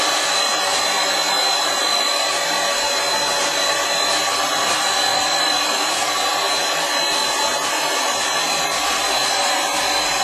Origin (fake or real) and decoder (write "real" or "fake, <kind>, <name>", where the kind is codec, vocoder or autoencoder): real